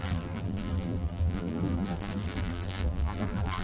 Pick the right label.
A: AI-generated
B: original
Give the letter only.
A